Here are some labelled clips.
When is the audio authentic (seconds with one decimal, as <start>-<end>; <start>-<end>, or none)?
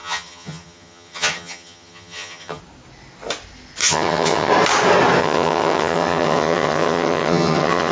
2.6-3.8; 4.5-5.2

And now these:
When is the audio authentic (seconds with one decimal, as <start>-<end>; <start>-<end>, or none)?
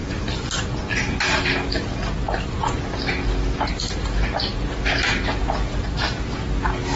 0.0-4.5; 5.4-7.0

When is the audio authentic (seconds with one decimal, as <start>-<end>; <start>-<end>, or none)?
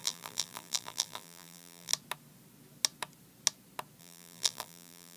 1.9-4.0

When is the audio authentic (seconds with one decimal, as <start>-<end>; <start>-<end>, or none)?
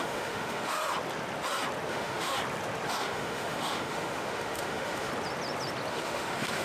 0.8-1.9; 2.3-2.9; 5.1-5.9